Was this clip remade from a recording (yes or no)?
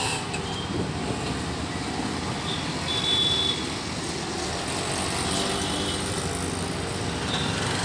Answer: no